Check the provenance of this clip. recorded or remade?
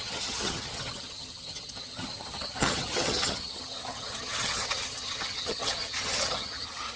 remade